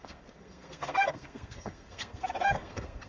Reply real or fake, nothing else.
fake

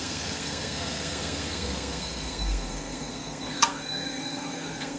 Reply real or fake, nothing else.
fake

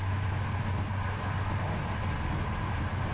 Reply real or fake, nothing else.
real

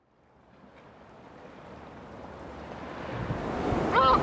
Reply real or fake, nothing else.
real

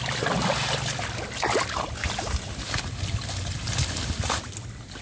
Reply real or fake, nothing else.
real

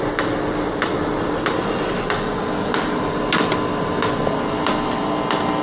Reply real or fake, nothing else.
real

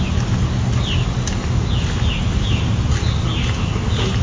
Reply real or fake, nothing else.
real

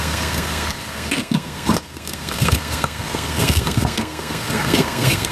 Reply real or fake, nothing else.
fake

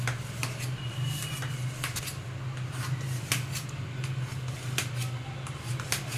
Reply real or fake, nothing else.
real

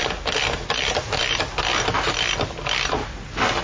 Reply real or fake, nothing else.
real